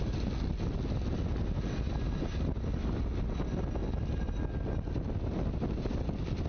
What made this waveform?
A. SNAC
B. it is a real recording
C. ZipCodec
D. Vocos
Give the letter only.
B